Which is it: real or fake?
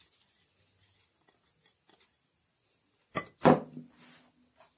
real